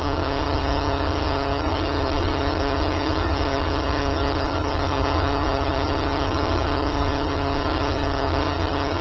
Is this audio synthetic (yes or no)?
yes